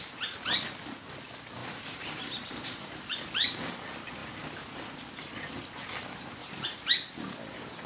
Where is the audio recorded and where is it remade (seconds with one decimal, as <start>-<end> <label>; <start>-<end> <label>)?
0.0-1.6 recorded; 1.6-3.8 remade; 3.8-6.4 recorded; 6.4-6.9 remade; 6.9-7.9 recorded